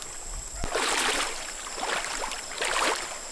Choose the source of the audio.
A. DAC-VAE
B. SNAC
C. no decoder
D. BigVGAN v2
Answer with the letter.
C